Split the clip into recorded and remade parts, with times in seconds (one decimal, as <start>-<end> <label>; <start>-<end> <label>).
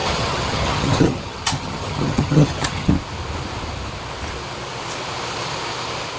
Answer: 0.0-2.9 remade; 2.9-6.2 recorded